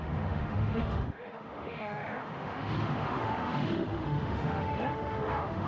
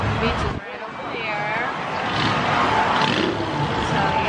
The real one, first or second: second